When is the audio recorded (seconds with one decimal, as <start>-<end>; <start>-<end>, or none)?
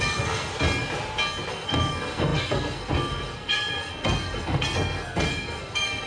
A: 0.5-1.5